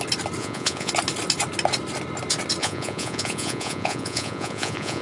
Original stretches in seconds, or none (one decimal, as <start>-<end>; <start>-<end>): 0.0-0.4; 0.9-2.6